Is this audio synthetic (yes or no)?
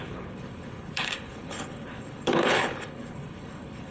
yes